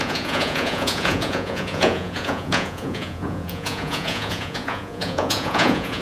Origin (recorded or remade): remade